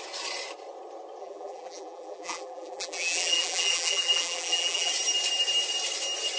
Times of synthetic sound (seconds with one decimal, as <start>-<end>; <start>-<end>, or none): 1.2-4.9